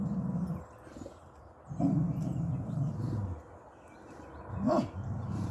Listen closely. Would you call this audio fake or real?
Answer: real